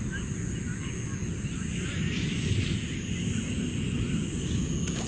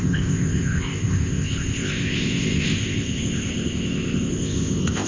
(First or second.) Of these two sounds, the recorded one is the first